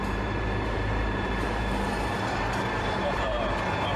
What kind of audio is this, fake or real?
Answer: fake